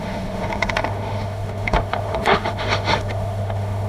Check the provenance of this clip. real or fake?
fake